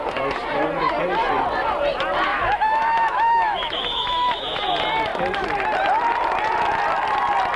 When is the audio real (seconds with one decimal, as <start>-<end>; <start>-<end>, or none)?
0.0-2.3; 4.6-7.6